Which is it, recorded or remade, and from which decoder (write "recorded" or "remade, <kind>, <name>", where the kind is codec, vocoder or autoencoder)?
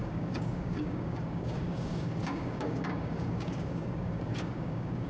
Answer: remade, codec, DAC